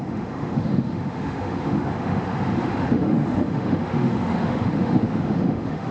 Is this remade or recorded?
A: remade